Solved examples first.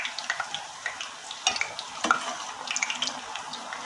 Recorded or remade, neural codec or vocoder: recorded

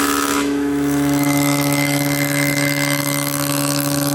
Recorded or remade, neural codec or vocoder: remade, autoencoder, DAC-VAE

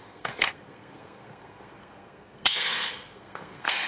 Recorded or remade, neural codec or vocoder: remade, codec, SNAC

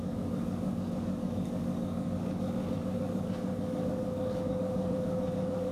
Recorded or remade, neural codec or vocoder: remade, codec, DAC